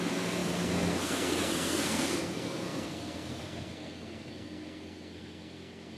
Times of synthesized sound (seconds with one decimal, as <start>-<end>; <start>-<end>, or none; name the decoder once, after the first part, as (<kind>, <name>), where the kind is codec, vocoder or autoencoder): 0.0-6.0 (codec, SNAC)